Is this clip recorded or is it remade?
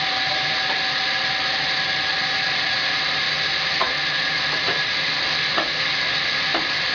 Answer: recorded